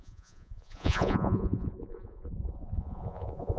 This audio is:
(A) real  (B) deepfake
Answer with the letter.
B